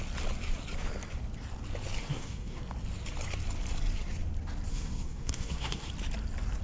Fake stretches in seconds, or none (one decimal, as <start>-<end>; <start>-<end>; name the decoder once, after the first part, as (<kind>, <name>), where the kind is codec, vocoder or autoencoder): 2.0-2.6 (codec, SNAC); 4.7-5.9